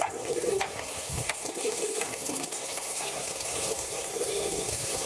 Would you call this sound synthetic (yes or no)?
yes